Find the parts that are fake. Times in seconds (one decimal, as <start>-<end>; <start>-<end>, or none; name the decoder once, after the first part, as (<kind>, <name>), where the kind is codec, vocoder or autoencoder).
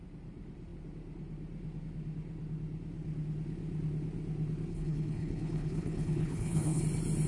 4.7-6.8 (codec, HILCodec)